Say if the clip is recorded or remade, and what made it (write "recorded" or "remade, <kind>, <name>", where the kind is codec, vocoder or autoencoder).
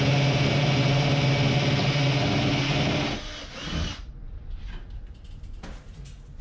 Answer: recorded